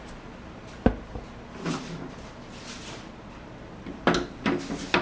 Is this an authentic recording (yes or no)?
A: yes